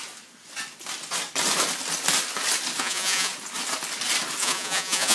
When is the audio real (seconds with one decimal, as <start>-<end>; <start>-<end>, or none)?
0.0-2.8; 3.3-4.4